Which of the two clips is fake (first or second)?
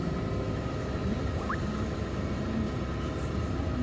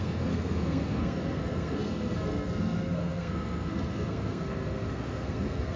second